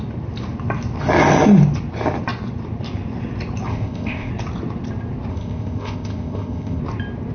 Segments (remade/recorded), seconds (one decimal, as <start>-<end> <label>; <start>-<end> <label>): 0.0-3.7 recorded; 3.7-4.3 remade; 4.3-5.3 recorded; 5.3-6.8 remade; 6.8-7.3 recorded